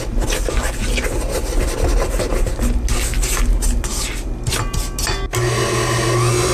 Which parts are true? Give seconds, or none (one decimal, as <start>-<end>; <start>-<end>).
0.0-6.5